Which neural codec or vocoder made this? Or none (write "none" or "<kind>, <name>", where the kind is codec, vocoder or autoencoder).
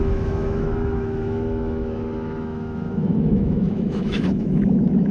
autoencoder, DAC-VAE